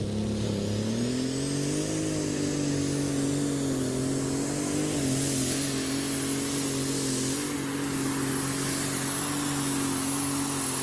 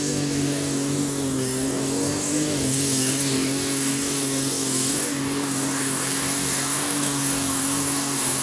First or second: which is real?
first